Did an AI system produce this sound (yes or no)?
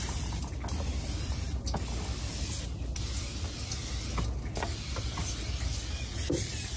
no